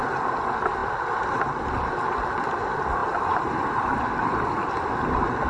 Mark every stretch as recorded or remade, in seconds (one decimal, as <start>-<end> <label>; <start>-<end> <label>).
0.0-5.5 recorded